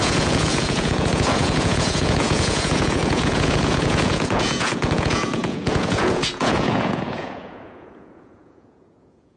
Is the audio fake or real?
fake